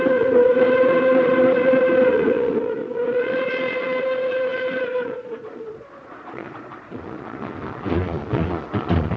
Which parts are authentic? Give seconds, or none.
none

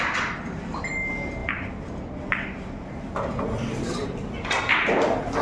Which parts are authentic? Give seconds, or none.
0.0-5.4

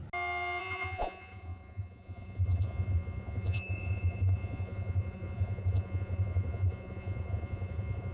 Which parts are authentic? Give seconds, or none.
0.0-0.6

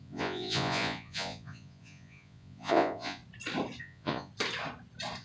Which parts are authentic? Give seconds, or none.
3.2-3.8; 4.3-5.2